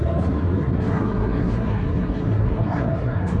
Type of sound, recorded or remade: remade